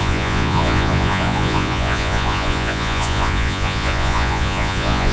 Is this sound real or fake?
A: fake